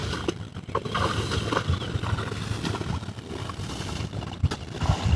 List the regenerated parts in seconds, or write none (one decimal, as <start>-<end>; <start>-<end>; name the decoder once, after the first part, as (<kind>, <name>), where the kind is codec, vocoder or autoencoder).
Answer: none